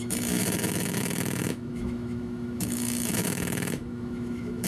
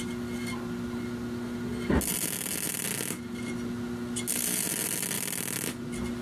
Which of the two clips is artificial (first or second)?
first